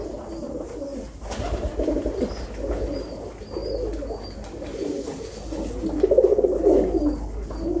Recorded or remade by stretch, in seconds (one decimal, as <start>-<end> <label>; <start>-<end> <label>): 0.0-7.8 recorded